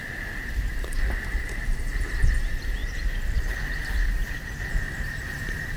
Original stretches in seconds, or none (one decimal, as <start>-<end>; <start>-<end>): 0.0-0.7; 2.8-4.7